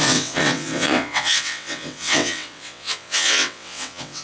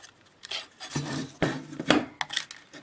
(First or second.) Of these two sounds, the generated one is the first